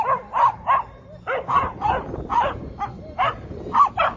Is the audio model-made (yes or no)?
no